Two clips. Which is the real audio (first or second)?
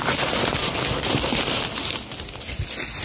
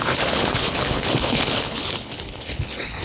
first